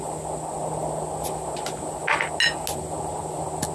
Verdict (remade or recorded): recorded